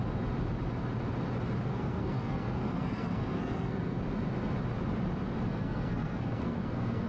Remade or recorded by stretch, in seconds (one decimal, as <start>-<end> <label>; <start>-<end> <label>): 0.0-1.7 recorded; 1.7-4.0 remade; 4.0-5.5 recorded; 5.5-7.1 remade